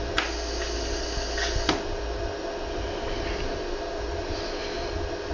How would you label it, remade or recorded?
recorded